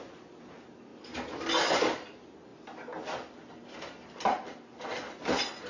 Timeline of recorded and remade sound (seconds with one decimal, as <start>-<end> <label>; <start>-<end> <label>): 0.0-5.7 recorded